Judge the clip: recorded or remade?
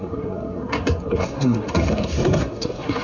remade